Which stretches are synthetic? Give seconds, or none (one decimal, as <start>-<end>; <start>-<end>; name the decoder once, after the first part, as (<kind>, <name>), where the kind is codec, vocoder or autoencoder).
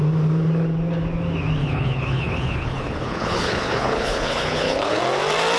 1.6-5.0 (codec, HILCodec)